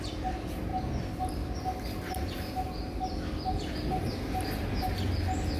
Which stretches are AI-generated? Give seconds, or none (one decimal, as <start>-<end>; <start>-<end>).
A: none